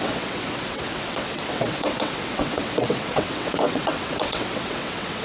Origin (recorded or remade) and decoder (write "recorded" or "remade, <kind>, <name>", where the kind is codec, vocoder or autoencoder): remade, vocoder, WaveNeXt